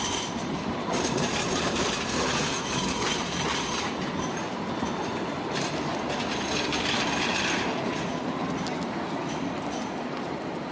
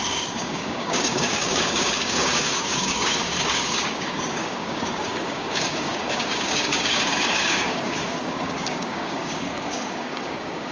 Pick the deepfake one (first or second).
second